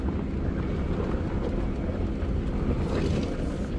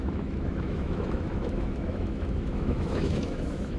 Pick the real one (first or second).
first